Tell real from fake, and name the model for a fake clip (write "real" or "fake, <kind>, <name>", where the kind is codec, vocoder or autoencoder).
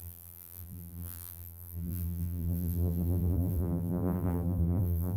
fake, vocoder, BigVGAN v2